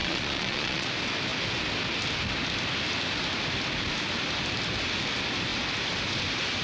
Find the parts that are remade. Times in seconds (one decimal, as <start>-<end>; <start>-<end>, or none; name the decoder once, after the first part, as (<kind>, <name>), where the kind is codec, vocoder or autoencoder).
0.0-0.9 (vocoder, Vocos)